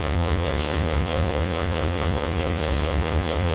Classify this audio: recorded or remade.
remade